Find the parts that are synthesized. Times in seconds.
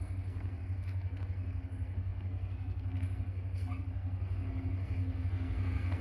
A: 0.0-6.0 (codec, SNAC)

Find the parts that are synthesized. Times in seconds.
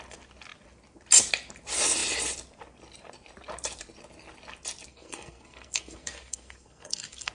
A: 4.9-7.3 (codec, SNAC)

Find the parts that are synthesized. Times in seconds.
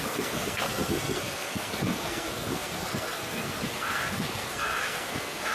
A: 0.0-5.5 (codec, SNAC)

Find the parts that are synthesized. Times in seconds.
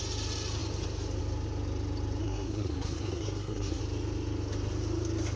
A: 2.2-3.8 (codec, SNAC)